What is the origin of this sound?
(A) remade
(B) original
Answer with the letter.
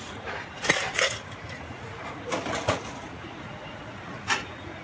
A